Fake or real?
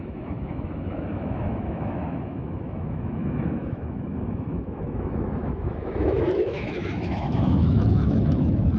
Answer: fake